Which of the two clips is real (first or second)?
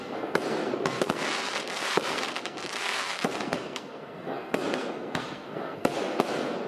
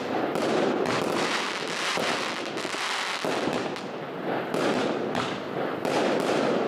second